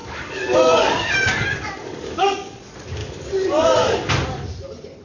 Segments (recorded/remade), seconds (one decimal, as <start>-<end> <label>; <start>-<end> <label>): 0.0-2.6 remade; 2.6-3.0 recorded; 3.0-4.1 remade; 4.1-5.0 recorded